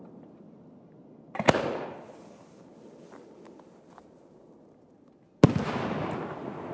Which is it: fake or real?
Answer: real